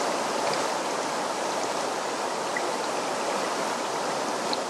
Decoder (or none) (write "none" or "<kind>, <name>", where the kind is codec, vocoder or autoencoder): none